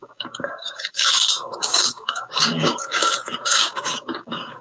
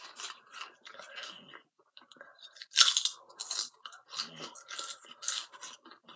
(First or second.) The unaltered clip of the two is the second